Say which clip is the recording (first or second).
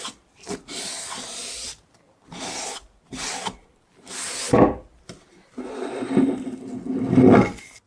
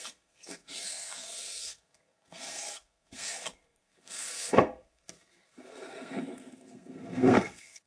first